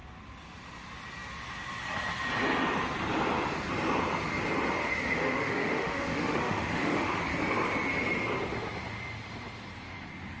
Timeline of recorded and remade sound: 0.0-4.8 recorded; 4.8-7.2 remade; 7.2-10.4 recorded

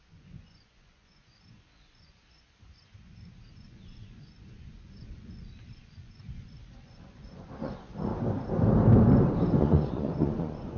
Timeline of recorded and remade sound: 0.0-8.1 remade; 8.1-9.6 recorded; 9.6-10.8 remade